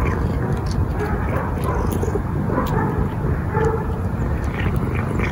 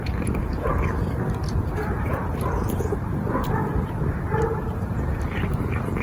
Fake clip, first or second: second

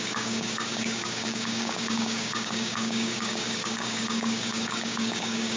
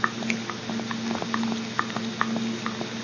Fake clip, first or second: first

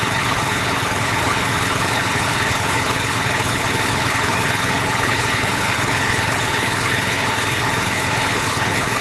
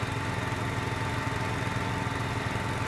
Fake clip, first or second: first